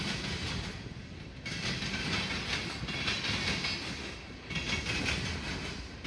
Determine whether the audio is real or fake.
real